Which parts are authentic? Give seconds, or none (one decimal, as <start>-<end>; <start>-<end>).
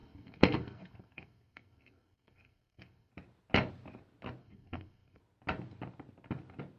3.1-4.4; 5.2-6.8